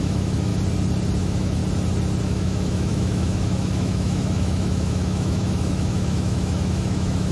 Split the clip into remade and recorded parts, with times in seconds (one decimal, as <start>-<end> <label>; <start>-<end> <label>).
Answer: 0.0-0.5 remade; 0.5-1.2 recorded; 1.2-1.6 remade; 1.6-2.2 recorded; 2.2-7.3 remade